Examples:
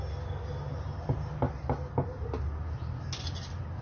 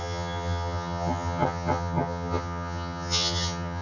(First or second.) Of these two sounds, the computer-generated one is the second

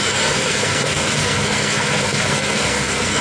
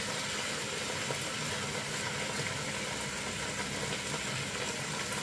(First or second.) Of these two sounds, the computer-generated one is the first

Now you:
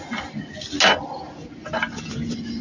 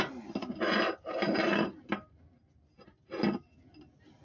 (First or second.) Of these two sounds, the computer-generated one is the second